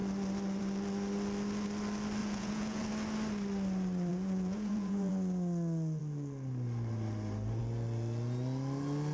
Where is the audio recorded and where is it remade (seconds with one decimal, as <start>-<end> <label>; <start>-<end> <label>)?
0.0-2.2 recorded; 2.2-2.9 remade; 2.9-4.1 recorded; 4.1-5.1 remade; 5.1-9.1 recorded